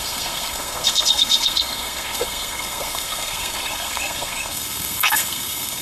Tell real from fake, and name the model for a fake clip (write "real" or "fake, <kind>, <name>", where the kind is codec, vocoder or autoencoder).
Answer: fake, codec, SNAC